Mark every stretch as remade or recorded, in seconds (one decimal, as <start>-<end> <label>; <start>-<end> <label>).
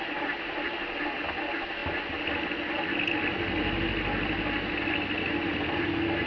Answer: 0.0-6.3 recorded